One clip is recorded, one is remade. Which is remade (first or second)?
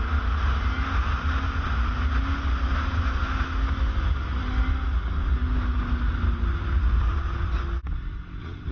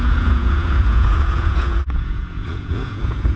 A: second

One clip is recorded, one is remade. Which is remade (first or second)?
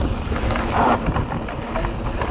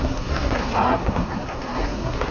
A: second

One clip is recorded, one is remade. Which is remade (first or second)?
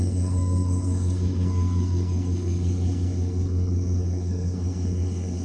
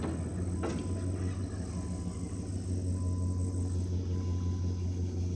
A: first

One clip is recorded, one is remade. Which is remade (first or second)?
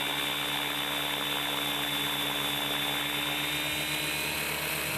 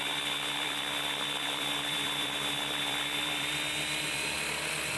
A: second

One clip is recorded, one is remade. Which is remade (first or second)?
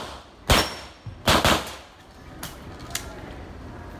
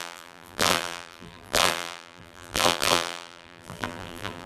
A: second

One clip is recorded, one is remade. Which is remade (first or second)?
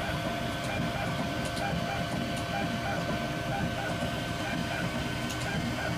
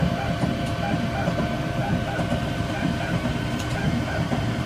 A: second